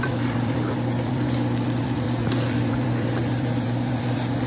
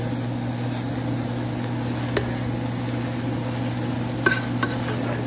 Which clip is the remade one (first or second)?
first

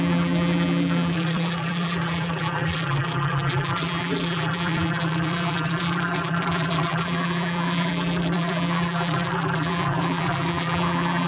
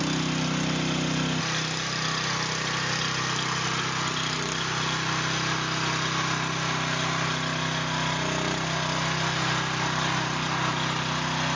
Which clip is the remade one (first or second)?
first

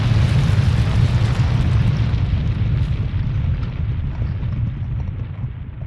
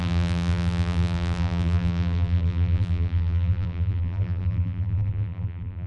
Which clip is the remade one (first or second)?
second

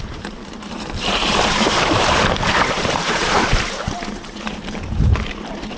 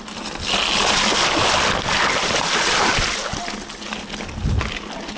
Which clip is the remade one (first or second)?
first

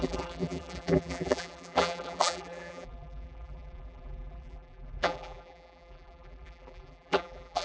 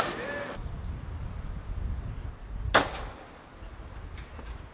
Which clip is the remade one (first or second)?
first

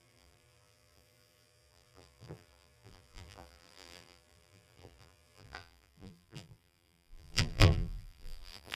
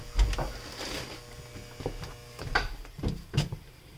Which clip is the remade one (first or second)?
first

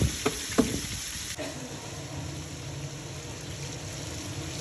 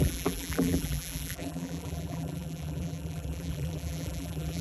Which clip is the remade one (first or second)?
second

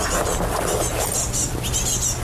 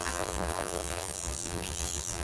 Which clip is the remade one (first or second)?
second